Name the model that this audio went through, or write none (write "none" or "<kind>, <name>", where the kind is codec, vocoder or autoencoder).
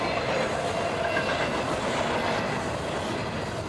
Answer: none